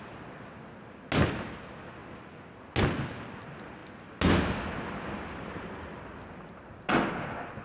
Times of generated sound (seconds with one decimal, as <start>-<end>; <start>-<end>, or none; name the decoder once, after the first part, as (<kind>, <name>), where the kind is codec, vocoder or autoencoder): none